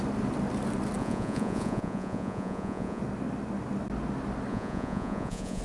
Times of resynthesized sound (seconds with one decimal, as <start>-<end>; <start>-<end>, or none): 1.0-3.0; 4.5-5.6